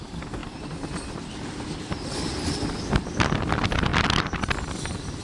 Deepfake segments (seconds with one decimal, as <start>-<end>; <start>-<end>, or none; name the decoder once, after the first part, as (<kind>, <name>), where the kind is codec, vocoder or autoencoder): 3.9-4.7 (vocoder, BigVGAN v2)